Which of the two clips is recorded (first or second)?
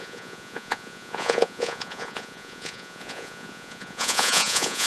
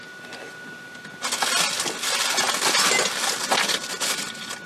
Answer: second